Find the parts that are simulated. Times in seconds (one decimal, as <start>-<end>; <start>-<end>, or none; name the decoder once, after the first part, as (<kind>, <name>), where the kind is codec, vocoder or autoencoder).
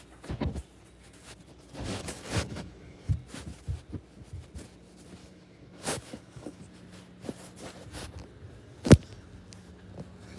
2.0-3.1 (codec, DAC); 5.2-6.6